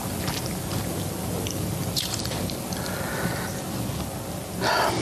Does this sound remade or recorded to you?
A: recorded